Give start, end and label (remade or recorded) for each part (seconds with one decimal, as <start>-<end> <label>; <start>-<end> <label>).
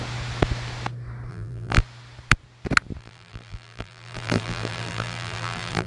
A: 0.0-1.3 recorded; 1.3-1.8 remade; 1.8-3.0 recorded; 3.0-5.9 remade